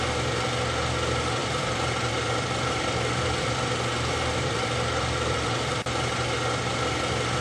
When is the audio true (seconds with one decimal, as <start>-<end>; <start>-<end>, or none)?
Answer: 0.0-1.4; 5.8-7.4